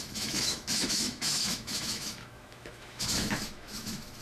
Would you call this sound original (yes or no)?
no